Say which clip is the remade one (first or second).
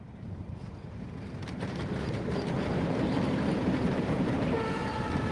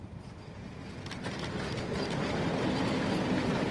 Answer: first